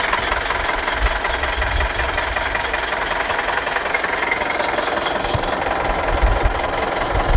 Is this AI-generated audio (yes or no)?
no